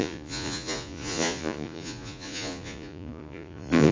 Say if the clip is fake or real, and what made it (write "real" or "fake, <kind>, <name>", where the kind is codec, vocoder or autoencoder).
fake, vocoder, Vocos